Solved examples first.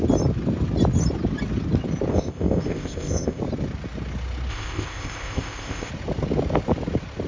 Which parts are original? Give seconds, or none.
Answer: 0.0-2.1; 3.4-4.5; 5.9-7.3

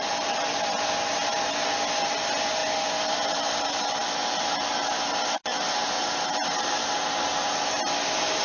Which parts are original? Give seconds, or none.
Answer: 0.0-8.4

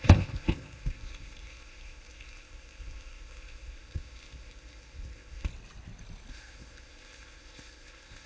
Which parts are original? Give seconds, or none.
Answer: 5.5-6.3

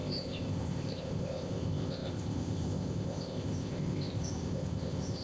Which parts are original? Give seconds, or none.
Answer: none